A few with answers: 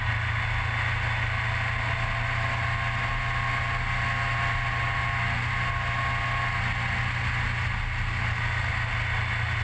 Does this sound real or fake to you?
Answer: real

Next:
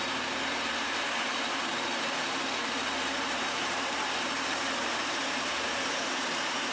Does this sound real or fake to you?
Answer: fake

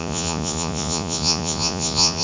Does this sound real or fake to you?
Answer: fake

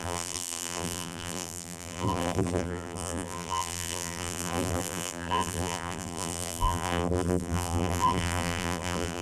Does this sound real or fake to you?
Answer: fake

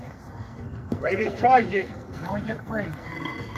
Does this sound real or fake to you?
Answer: fake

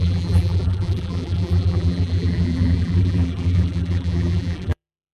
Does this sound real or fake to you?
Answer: fake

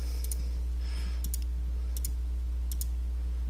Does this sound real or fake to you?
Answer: real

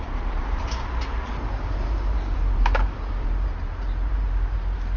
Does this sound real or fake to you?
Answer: fake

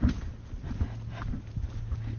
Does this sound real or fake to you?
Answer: real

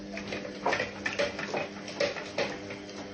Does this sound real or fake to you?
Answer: real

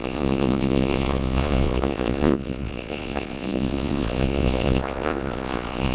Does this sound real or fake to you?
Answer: fake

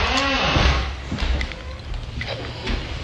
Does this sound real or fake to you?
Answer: real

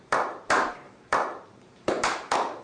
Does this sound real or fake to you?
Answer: fake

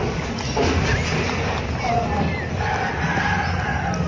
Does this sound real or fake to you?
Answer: real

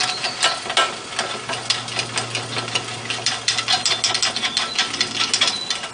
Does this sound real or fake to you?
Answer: real